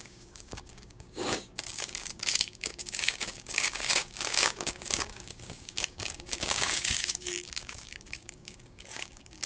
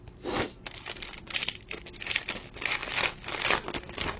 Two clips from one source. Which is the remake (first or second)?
first